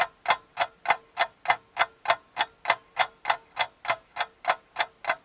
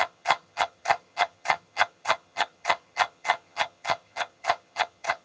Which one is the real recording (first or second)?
first